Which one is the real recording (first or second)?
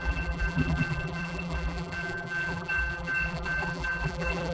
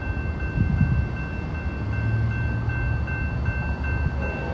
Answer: second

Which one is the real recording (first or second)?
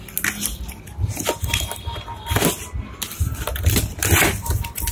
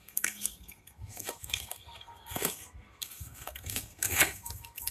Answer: first